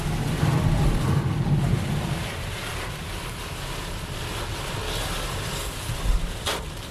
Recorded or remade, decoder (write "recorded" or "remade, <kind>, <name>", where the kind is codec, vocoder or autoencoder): recorded